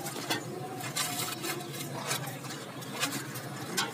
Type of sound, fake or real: real